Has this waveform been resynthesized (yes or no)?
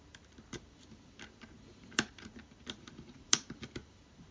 yes